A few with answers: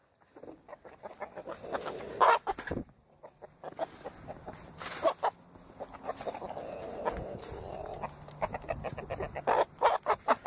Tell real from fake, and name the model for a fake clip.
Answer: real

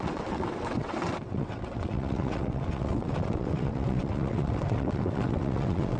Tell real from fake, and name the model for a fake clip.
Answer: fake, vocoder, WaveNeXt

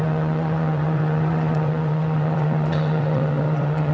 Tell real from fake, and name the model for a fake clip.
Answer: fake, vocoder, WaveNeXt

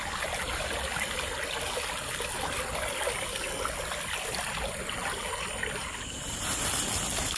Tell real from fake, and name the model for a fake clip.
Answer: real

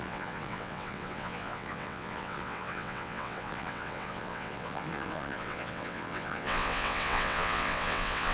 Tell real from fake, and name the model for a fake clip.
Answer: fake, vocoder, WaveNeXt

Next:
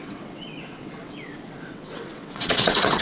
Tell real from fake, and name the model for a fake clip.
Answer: fake, vocoder, WaveNeXt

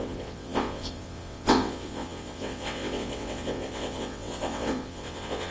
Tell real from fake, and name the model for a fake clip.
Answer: fake, vocoder, WaveNeXt